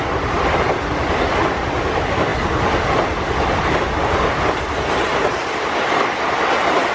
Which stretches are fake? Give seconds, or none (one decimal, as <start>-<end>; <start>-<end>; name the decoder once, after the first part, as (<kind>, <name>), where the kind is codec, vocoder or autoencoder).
none